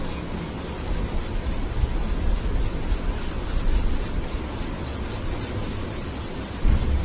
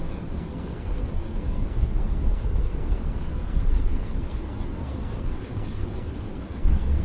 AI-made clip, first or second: second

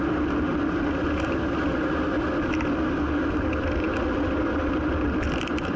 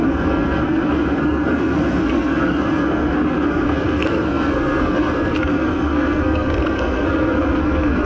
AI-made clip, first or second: second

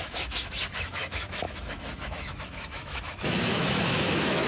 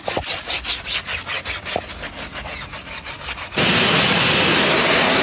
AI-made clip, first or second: first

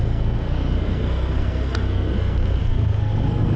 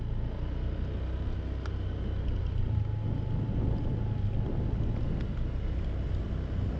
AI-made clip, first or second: first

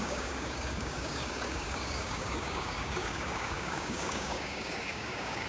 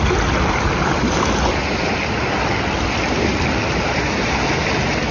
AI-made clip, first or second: first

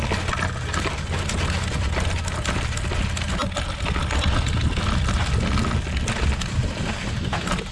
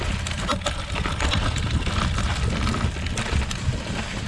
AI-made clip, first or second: second